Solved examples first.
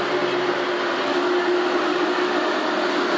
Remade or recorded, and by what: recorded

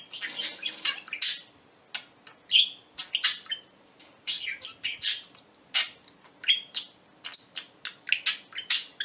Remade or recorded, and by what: recorded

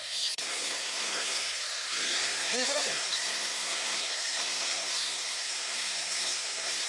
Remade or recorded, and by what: remade, codec, SNAC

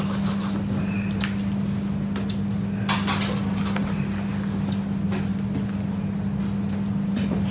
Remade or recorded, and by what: recorded